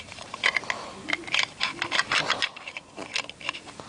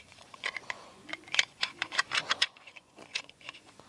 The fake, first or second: second